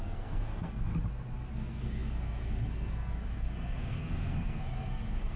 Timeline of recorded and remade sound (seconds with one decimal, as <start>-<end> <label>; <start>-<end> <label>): 0.0-0.9 remade; 0.9-1.5 recorded; 1.5-5.4 remade